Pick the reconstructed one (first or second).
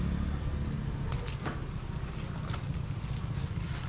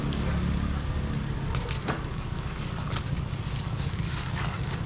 second